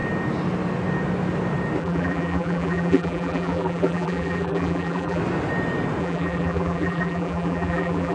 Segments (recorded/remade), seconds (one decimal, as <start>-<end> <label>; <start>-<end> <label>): 0.0-1.8 recorded; 1.8-5.2 remade; 5.2-6.0 recorded; 6.0-8.1 remade